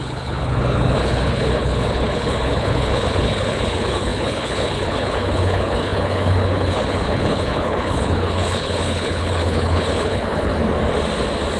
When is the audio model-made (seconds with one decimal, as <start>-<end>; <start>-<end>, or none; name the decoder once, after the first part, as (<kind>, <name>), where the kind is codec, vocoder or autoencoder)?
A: 0.0-10.5 (codec, HILCodec)